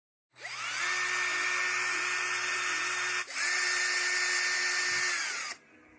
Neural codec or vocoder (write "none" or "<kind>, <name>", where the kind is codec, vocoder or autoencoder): none